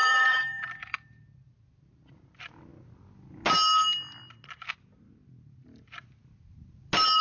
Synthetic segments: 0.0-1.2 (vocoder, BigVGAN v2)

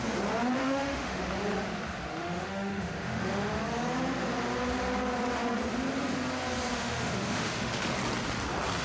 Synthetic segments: 0.6-1.2 (autoencoder, DAC-VAE); 2.2-3.2; 6.7-7.7